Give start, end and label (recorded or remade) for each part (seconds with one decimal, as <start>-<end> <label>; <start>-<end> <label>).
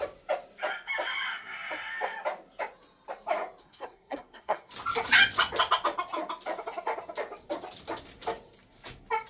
0.0-3.6 recorded; 3.6-4.7 remade; 4.7-9.3 recorded